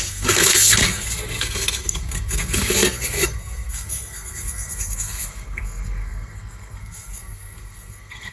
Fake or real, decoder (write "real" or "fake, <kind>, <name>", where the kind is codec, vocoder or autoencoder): fake, codec, SNAC